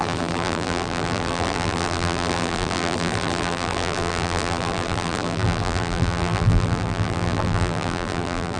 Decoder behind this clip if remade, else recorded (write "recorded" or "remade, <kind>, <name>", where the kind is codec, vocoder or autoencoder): remade, vocoder, BigVGAN v2